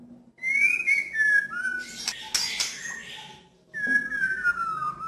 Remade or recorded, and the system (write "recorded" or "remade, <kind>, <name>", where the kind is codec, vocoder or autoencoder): recorded